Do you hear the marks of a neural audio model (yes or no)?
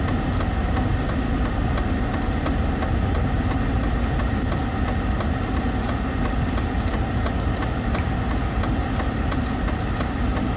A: no